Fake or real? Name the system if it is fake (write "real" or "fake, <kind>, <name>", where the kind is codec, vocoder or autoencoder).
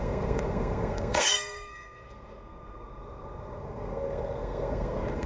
fake, codec, SNAC